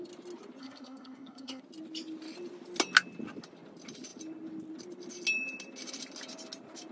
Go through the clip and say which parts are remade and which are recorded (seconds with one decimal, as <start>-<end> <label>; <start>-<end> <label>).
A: 0.0-0.6 recorded; 0.6-1.6 remade; 1.6-6.9 recorded